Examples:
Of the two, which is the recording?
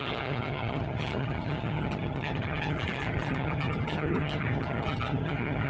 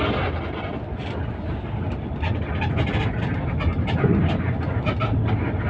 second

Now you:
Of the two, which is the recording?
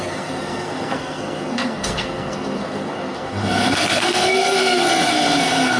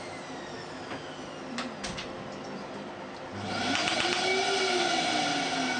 second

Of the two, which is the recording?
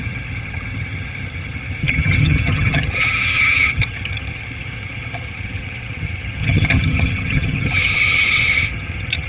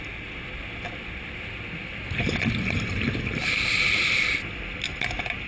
second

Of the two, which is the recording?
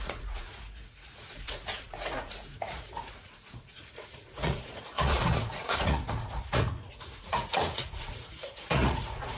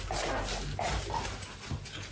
second